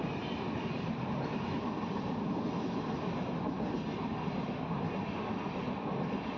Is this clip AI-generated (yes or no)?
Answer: no